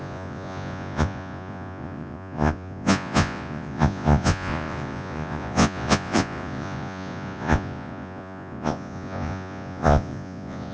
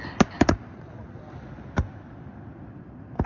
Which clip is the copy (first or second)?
first